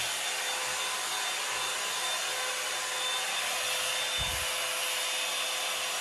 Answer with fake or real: real